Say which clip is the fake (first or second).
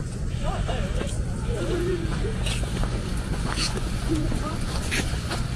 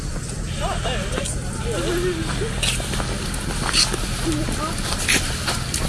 first